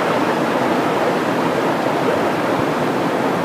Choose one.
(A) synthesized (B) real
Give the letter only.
B